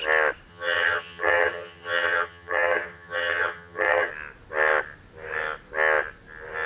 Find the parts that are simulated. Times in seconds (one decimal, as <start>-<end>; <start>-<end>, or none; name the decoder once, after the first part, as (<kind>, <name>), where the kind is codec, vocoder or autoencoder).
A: 0.5-4.1 (vocoder, HiFi-GAN)